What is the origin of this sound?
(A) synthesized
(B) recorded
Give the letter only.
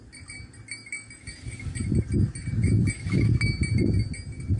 B